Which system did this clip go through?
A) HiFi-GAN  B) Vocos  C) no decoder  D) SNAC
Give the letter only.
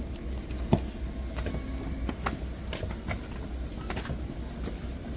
C